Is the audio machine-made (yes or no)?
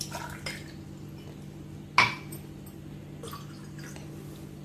no